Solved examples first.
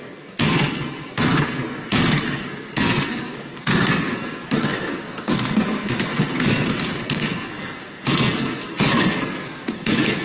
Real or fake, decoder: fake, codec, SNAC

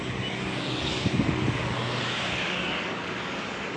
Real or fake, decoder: fake, codec, DAC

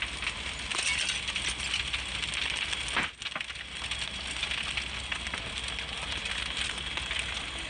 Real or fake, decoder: real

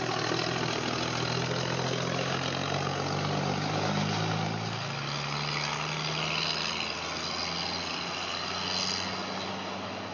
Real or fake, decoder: real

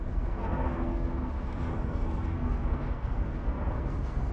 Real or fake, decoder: fake, codec, SNAC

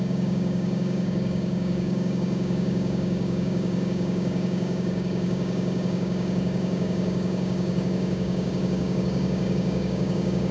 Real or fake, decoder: fake, codec, DAC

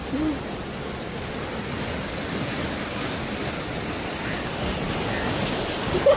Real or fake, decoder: real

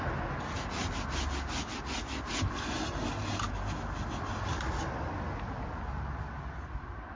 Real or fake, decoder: real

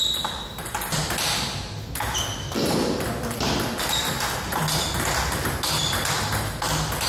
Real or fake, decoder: real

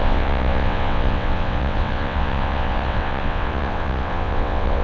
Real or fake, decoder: fake, vocoder, WaveNeXt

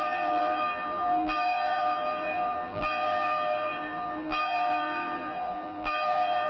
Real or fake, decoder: fake, vocoder, BigVGAN v2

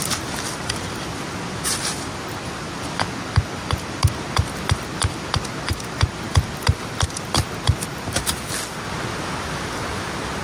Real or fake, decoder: real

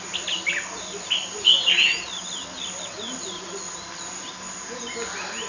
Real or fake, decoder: real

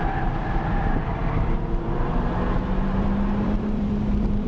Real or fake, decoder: fake, vocoder, BigVGAN v2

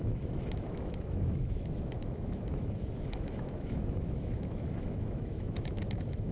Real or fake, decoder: fake, autoencoder, DAC-VAE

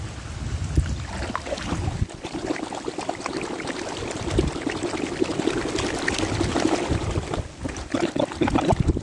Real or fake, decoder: real